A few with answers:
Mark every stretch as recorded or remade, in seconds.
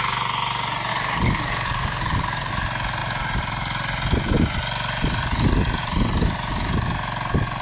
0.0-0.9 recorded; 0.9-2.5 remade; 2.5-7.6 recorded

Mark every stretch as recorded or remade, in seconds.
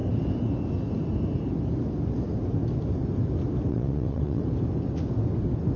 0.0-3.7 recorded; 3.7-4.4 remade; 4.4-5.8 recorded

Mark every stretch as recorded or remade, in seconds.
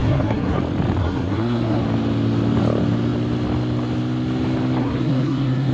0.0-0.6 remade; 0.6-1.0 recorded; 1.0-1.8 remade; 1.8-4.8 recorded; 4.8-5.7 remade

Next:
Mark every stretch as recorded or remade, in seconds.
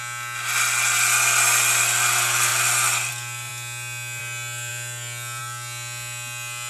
0.0-6.7 recorded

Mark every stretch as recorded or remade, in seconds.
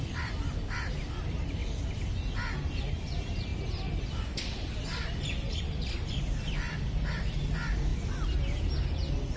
0.0-9.4 recorded